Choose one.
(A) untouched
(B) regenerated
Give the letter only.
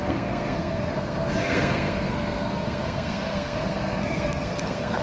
B